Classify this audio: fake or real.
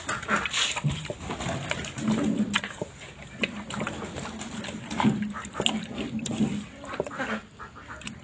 real